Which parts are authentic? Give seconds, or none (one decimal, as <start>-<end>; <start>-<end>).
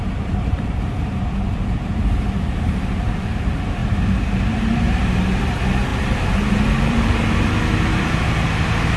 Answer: none